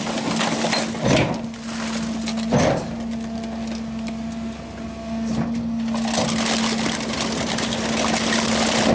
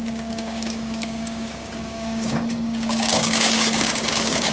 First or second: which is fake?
second